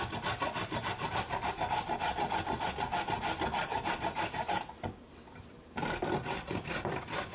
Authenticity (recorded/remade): remade